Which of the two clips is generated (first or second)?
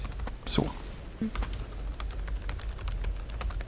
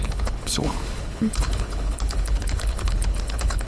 second